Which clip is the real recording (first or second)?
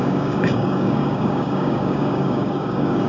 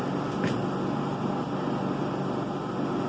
second